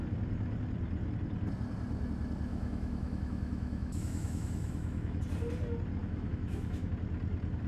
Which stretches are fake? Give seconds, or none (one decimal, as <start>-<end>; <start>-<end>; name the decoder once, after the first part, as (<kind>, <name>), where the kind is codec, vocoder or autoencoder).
2.5-5.2 (autoencoder, DAC-VAE); 6.0-6.9